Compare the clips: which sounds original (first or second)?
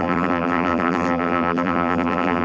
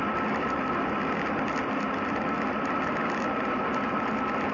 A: second